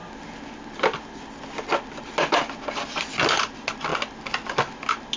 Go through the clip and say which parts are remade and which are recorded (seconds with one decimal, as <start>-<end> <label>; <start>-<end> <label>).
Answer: 0.0-5.2 recorded